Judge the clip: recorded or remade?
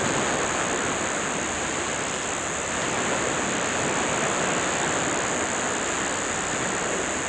recorded